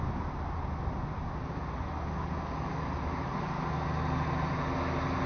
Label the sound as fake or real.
real